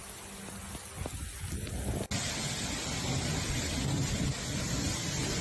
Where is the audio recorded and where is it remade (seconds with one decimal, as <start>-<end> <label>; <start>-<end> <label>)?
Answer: 0.0-5.4 recorded